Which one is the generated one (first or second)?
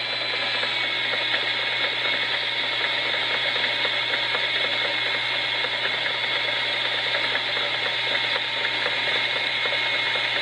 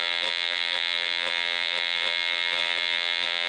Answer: second